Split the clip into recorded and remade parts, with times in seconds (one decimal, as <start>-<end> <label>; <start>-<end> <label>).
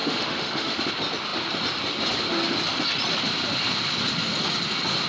0.0-0.9 remade; 0.9-5.1 recorded